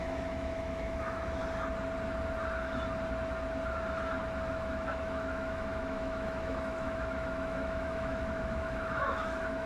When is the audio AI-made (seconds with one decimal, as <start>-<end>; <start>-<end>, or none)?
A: 0.0-1.4; 4.5-9.7